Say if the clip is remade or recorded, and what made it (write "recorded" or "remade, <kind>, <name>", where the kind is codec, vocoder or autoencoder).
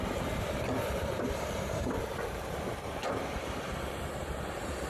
remade, vocoder, BigVGAN v2